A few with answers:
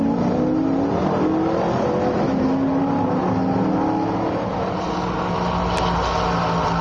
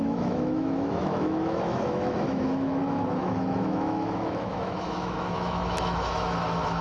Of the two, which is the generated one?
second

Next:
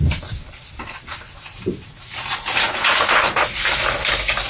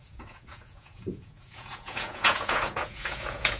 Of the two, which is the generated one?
second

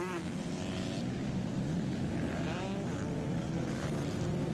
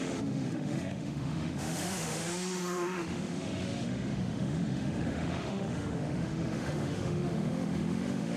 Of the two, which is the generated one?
second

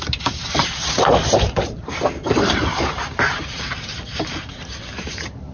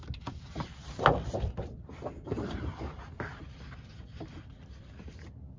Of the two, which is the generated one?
first